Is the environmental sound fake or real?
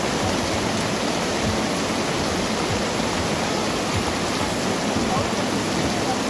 real